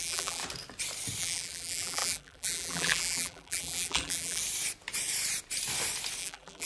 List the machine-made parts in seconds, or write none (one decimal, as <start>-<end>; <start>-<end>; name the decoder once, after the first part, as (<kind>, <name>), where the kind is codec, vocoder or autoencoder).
0.0-0.4 (vocoder, BigVGAN v2); 1.2-4.4; 6.2-6.7